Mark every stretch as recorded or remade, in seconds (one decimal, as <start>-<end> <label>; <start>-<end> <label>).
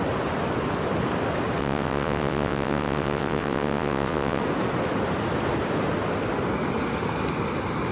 0.0-1.6 recorded; 1.6-4.4 remade; 4.4-7.9 recorded